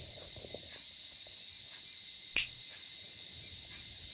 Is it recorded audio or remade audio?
recorded